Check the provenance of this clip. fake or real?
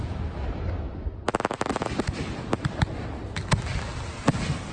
real